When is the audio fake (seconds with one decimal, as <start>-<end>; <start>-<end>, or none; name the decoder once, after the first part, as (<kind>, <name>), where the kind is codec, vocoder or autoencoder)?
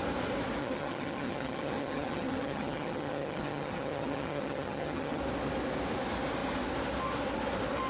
0.6-5.2 (vocoder, HiFi-GAN)